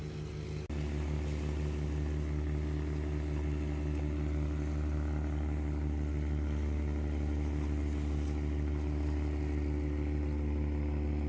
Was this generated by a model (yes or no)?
no